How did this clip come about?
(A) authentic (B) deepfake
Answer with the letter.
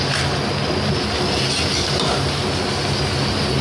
A